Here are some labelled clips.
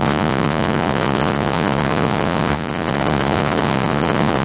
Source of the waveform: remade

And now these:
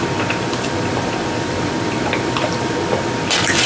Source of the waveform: remade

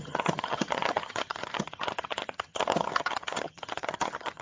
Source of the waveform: remade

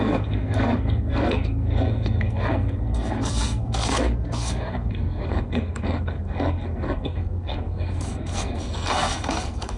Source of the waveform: remade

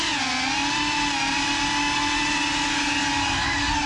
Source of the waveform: recorded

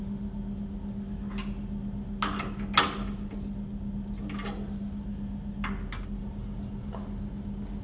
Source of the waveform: recorded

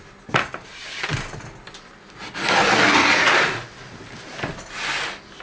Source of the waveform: recorded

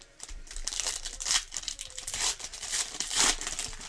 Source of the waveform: remade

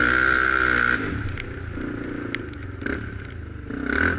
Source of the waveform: recorded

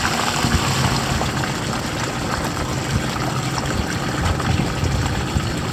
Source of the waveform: recorded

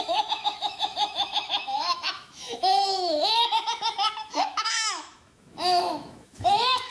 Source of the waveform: remade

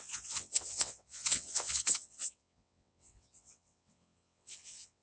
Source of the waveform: remade